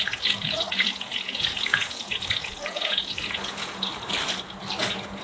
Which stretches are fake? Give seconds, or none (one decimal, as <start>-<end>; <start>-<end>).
0.0-3.9; 4.8-5.2